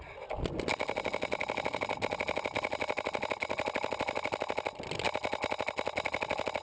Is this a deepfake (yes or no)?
no